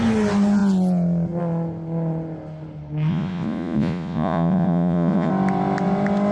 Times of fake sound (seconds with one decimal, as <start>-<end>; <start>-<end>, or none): 3.1-5.3